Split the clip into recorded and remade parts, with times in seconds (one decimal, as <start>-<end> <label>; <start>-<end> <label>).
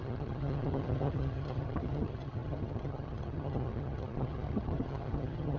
0.0-5.6 remade